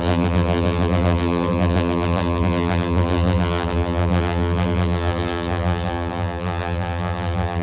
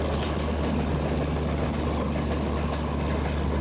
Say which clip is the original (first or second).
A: second